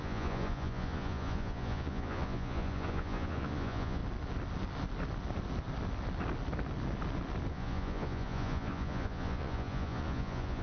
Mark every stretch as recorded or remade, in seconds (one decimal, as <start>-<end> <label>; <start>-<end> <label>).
0.0-4.0 remade; 4.0-7.5 recorded; 7.5-10.6 remade